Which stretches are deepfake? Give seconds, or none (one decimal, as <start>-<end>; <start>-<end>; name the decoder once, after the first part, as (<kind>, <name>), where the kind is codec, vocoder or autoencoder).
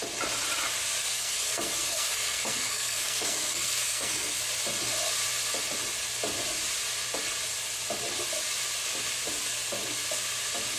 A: 1.0-4.4 (codec, SNAC)